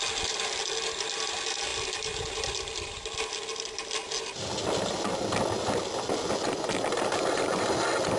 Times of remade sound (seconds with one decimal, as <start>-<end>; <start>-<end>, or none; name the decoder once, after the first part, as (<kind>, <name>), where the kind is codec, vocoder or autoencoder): none